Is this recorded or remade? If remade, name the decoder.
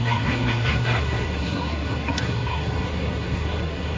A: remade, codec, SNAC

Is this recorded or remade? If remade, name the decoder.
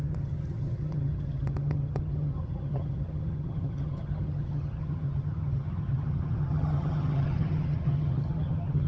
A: remade, vocoder, HiFi-GAN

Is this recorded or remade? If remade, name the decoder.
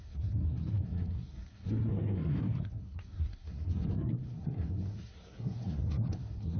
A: remade, codec, SNAC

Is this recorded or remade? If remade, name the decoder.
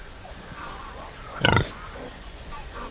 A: remade, vocoder, Vocos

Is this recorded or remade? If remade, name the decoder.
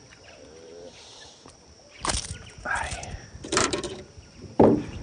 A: remade, vocoder, BigVGAN v2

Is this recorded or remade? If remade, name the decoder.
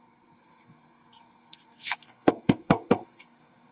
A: remade, codec, SNAC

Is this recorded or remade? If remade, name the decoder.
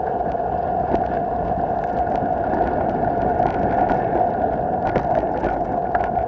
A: recorded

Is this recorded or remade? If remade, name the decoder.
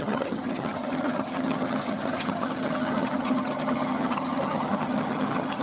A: remade, vocoder, HiFi-GAN